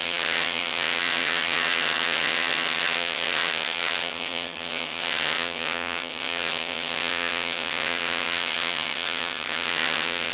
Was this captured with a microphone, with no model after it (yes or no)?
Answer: no